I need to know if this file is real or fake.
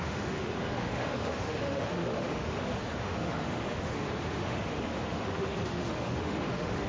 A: fake